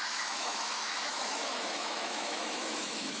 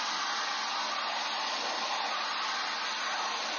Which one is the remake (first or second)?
first